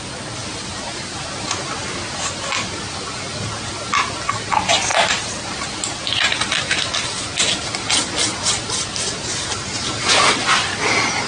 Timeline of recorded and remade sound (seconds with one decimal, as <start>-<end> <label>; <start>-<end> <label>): 0.0-0.4 recorded; 0.4-2.3 remade; 2.3-4.9 recorded; 4.9-5.6 remade; 5.6-11.3 recorded